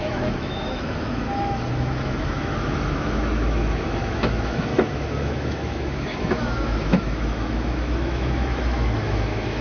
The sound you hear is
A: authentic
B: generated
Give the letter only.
B